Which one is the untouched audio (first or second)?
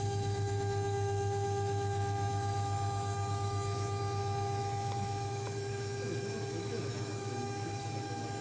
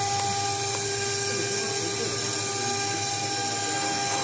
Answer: second